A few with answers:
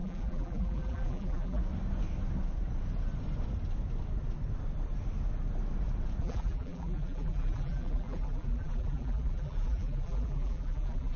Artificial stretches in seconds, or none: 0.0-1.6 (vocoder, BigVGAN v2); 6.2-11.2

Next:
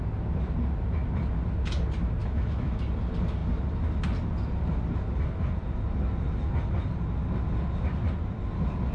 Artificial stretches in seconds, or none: 2.2-2.8 (autoencoder, DAC-VAE)

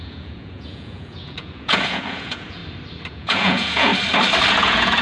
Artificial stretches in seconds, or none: 0.0-2.6 (vocoder, Vocos); 3.1-3.9; 4.5-5.0

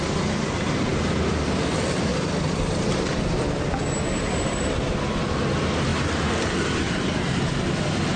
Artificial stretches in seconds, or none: none

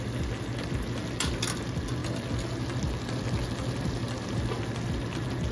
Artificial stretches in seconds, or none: none